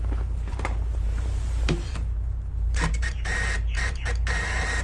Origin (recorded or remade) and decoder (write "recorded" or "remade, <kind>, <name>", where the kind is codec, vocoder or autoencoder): remade, vocoder, BigVGAN v2